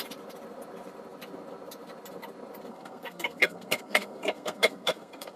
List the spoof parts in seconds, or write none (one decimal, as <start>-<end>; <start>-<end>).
2.7-5.4